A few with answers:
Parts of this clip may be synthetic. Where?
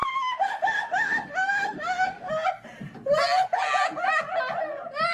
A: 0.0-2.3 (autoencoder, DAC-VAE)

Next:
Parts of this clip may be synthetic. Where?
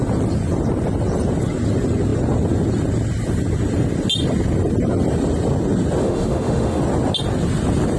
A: 6.0-6.8 (autoencoder, DAC-VAE)